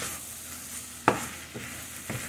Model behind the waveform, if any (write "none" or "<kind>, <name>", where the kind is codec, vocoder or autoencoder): none